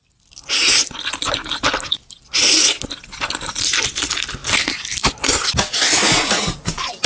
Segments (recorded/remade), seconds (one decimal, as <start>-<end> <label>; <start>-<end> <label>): 0.0-7.1 recorded